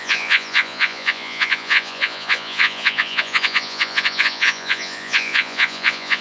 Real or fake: fake